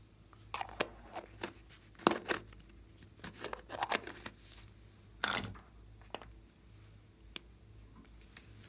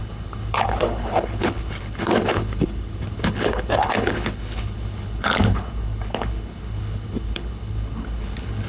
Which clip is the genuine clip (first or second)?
first